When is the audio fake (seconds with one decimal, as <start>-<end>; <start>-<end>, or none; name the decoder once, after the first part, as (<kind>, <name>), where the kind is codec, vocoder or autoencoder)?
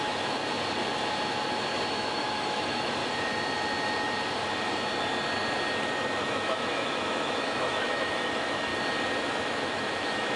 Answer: 0.0-0.4 (autoencoder, DAC-VAE); 1.9-3.0; 6.2-8.7; 9.3-10.4